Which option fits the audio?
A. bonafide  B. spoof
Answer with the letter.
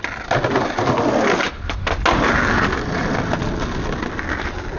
A